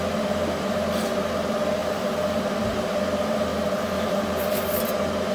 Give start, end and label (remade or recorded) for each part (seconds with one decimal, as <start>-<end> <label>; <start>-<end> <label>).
0.0-1.8 recorded; 1.8-2.4 remade; 2.4-3.5 recorded; 3.5-4.8 remade; 4.8-5.3 recorded